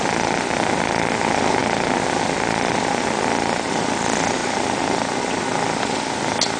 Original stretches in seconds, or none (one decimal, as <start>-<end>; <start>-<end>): 0.0-6.6